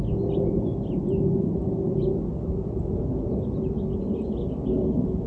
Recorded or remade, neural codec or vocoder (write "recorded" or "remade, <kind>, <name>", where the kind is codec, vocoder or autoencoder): recorded